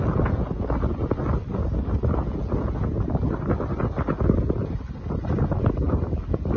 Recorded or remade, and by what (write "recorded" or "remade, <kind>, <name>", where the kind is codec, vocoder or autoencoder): recorded